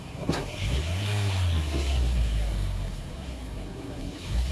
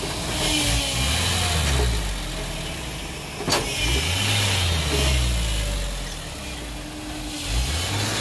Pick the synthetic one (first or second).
first